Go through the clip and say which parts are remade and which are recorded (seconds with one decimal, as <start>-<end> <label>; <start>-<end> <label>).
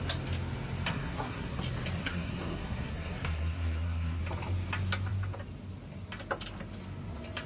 0.0-0.9 recorded; 0.9-1.6 remade; 1.6-2.0 recorded; 2.0-4.2 remade; 4.2-7.5 recorded